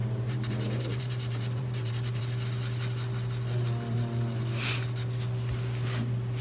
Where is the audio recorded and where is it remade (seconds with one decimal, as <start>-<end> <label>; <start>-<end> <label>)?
0.0-2.2 remade; 2.2-6.4 recorded